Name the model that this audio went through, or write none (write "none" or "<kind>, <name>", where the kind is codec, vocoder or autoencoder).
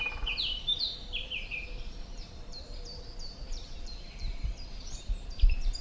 vocoder, BigVGAN v2